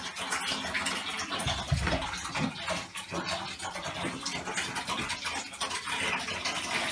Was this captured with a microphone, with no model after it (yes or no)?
yes